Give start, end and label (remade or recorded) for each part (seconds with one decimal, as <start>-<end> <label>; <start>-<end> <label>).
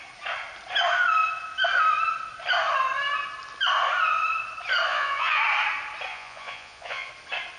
0.0-4.9 recorded; 4.9-5.4 remade; 5.4-6.1 recorded; 6.1-7.1 remade; 7.1-7.6 recorded